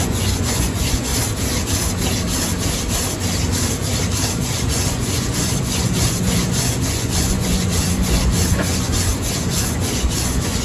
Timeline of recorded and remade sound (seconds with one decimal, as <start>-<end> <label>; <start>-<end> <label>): 0.0-1.1 remade; 1.1-4.4 recorded; 4.4-10.6 remade